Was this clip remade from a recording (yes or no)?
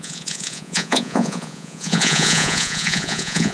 yes